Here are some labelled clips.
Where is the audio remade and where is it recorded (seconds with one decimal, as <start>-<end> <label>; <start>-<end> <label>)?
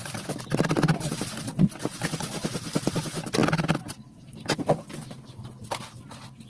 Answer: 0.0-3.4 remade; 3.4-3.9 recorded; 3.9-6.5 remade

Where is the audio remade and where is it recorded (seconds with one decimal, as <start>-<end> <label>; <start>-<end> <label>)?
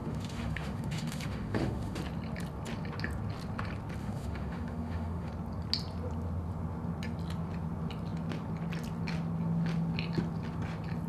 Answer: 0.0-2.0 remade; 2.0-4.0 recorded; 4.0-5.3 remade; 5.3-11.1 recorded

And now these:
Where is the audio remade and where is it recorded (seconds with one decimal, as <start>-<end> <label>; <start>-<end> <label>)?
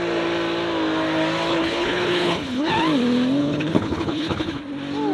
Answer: 0.0-1.5 recorded; 1.5-2.7 remade; 2.7-3.4 recorded; 3.4-4.6 remade; 4.6-5.1 recorded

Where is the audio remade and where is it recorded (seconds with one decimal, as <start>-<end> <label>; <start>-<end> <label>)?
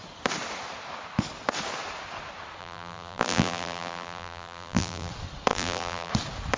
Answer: 0.0-2.6 recorded; 2.6-5.1 remade; 5.1-5.5 recorded; 5.5-6.1 remade; 6.1-6.6 recorded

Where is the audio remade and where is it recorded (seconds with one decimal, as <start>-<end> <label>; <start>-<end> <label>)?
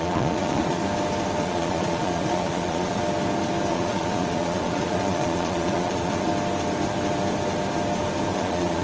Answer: 0.0-0.8 remade; 0.8-1.4 recorded; 1.4-3.0 remade; 3.0-3.7 recorded; 3.7-6.3 remade; 6.3-8.3 recorded; 8.3-8.8 remade